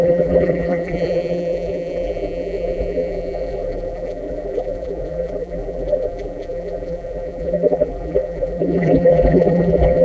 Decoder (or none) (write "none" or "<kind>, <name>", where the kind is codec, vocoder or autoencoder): vocoder, BigVGAN v2